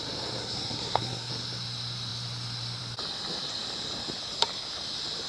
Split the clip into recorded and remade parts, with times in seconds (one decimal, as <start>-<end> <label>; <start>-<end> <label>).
0.0-0.4 recorded; 0.4-1.3 remade; 1.3-5.3 recorded

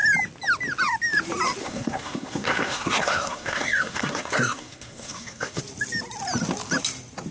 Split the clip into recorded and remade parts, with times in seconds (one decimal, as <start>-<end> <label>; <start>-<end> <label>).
0.0-1.6 recorded; 1.6-5.6 remade; 5.6-7.3 recorded